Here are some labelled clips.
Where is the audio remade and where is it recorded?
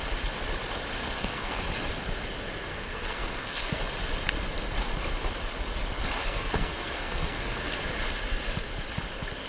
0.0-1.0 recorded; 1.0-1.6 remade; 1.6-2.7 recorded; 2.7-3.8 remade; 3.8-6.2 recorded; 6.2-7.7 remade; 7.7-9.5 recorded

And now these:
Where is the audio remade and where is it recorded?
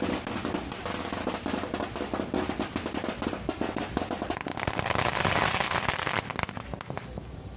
0.0-7.6 recorded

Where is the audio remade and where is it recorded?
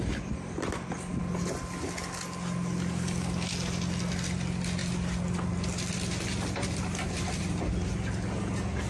0.0-8.9 recorded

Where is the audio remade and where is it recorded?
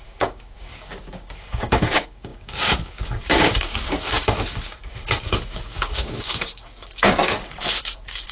0.0-8.3 remade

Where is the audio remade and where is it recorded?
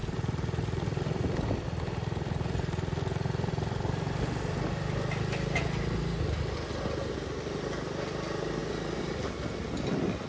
0.0-8.6 recorded; 8.6-9.5 remade; 9.5-10.3 recorded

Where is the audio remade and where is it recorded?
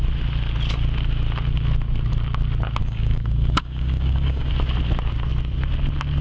0.0-2.8 recorded; 2.8-4.5 remade; 4.5-6.2 recorded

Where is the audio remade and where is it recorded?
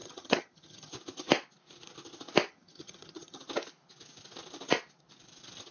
0.0-0.9 remade; 0.9-2.5 recorded; 2.5-3.4 remade; 3.4-5.7 recorded